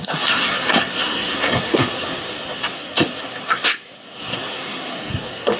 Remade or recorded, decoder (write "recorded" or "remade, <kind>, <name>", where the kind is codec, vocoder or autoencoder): remade, codec, SNAC